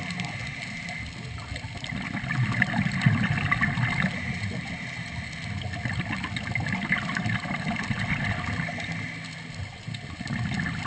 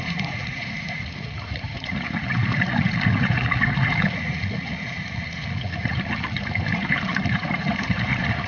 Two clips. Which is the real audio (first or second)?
first